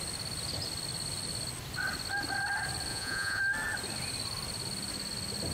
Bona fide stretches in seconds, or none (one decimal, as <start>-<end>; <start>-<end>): 0.0-2.9; 3.4-5.5